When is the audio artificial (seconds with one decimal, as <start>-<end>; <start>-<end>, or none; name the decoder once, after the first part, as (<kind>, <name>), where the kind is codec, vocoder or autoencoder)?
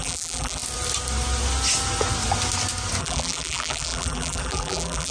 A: 0.0-0.6 (vocoder, BigVGAN v2); 3.0-5.1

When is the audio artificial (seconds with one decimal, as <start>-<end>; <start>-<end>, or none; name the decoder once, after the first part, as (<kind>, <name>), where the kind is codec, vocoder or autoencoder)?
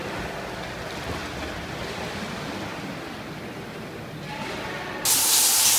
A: none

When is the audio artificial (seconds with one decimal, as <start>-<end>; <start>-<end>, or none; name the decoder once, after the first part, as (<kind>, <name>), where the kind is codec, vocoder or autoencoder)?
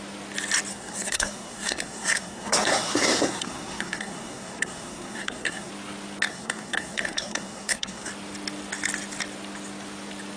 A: 0.7-5.7 (codec, SNAC); 6.3-8.1